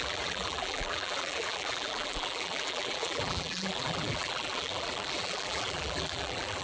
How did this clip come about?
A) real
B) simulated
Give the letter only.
B